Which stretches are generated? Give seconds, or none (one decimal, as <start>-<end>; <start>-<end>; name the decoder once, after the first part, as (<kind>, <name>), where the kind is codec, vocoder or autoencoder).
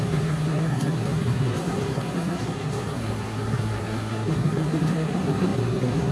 0.0-6.1 (codec, SNAC)